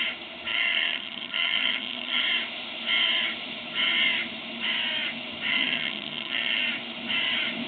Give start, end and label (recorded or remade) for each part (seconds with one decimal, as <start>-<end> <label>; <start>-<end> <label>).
0.0-0.5 recorded; 0.5-2.2 remade; 2.2-5.5 recorded; 5.5-6.6 remade; 6.6-7.7 recorded